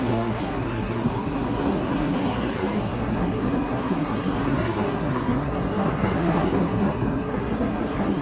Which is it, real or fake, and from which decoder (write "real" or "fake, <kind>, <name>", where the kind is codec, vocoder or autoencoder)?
fake, codec, SNAC